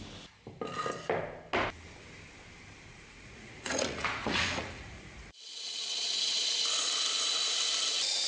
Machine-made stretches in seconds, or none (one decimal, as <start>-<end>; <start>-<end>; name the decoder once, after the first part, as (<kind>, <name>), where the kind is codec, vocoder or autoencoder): 2.9-5.4 (vocoder, Vocos)